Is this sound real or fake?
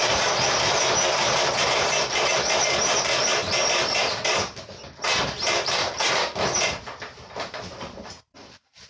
fake